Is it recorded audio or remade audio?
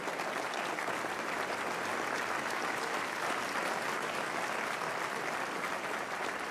recorded